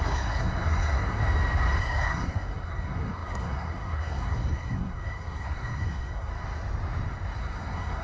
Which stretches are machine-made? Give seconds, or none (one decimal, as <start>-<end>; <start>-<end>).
0.0-1.2; 1.8-6.3; 7.4-8.0